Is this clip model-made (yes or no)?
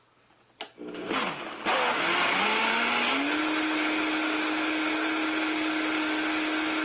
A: no